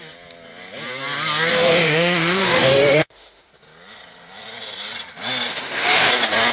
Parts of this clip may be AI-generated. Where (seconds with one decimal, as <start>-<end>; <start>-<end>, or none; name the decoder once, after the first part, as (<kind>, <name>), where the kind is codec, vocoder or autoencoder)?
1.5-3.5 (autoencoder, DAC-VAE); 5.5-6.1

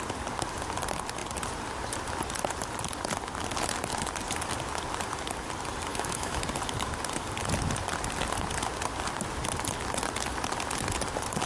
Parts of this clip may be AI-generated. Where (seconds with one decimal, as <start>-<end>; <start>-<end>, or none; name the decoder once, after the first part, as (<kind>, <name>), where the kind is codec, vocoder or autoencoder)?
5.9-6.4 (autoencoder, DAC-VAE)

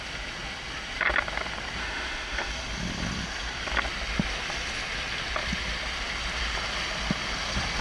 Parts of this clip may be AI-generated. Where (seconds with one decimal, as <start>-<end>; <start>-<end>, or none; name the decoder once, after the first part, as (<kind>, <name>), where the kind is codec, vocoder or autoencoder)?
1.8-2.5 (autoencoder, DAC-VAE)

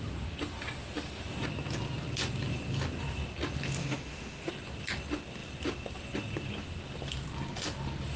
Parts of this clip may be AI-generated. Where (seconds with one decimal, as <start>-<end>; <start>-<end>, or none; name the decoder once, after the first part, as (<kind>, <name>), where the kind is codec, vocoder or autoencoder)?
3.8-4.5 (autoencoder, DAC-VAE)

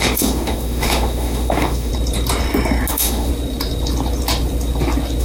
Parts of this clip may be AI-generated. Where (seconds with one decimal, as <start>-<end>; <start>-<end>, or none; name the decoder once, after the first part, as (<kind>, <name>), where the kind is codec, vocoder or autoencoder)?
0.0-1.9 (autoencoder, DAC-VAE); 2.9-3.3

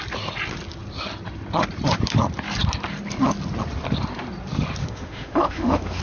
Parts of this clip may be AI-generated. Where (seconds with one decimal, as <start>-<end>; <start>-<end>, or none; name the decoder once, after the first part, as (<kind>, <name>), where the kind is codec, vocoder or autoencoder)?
4.8-6.0 (autoencoder, DAC-VAE)

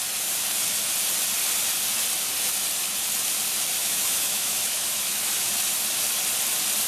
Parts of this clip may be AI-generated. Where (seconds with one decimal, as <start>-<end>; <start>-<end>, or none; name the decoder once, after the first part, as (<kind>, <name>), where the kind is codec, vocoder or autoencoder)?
3.8-5.5 (autoencoder, DAC-VAE)

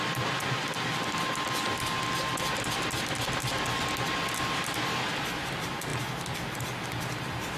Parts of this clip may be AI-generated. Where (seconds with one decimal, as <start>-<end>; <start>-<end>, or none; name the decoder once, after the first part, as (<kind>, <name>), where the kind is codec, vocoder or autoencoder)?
none